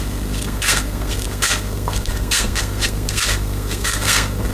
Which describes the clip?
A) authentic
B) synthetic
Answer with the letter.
B